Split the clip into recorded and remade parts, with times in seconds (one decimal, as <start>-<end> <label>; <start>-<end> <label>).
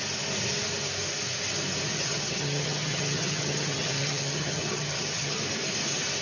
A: 0.0-1.9 recorded; 1.9-5.4 remade; 5.4-6.2 recorded